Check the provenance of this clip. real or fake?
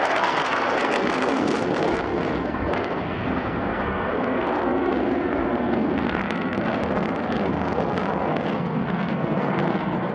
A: fake